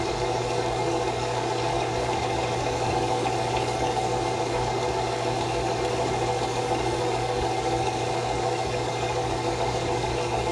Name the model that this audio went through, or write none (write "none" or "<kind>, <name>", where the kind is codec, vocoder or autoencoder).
codec, DAC